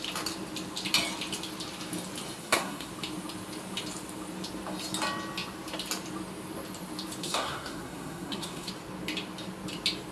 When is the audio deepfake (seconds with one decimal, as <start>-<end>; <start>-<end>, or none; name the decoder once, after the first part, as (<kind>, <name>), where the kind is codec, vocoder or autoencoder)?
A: 2.4-2.9 (codec, SNAC); 7.2-8.7